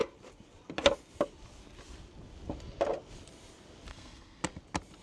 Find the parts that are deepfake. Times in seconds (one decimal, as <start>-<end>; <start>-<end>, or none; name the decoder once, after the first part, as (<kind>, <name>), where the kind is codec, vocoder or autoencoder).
3.9-4.4 (codec, SNAC)